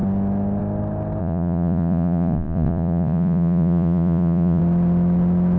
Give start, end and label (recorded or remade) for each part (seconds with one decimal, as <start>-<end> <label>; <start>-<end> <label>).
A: 0.0-1.2 recorded; 1.2-4.6 remade; 4.6-5.6 recorded